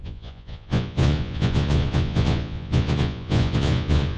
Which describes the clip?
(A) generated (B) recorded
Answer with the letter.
A